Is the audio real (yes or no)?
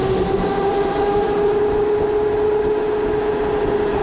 yes